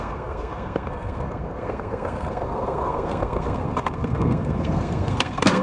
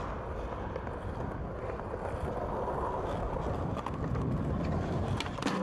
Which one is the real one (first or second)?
second